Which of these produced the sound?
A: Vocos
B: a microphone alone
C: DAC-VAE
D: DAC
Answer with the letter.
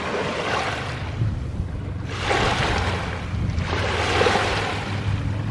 B